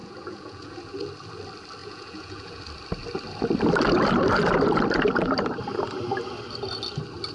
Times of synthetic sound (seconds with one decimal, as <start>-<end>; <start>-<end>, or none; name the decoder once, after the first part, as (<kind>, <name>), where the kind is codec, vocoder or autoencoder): 0.0-1.0 (vocoder, Vocos); 1.8-2.6